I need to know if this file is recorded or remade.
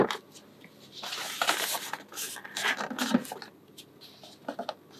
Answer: recorded